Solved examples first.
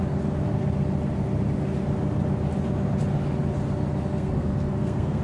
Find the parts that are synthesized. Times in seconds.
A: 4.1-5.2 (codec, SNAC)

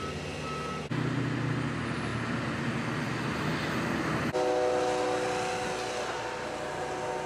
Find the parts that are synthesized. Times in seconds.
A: none

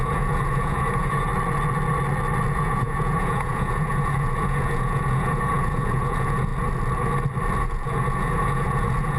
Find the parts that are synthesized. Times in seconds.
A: 0.0-1.3 (vocoder, Vocos); 2.5-6.5; 7.6-9.2

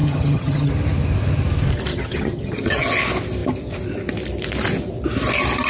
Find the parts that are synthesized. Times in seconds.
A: 0.0-0.7 (vocoder, HiFi-GAN); 1.9-2.9

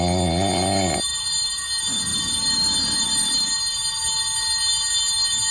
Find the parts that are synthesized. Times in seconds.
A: 1.1-1.7 (vocoder, BigVGAN v2); 2.1-3.3

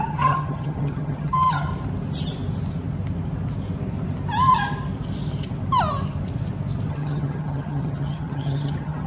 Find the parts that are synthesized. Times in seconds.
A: 0.0-1.7 (vocoder, HiFi-GAN); 6.9-9.1